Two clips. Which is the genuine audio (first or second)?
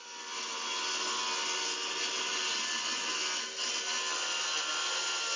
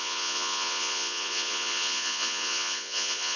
first